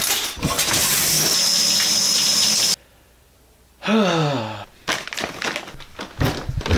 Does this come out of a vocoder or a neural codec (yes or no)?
no